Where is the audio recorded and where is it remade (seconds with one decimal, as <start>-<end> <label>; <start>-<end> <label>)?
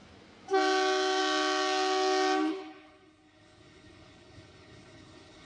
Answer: 0.0-2.5 recorded; 2.5-5.5 remade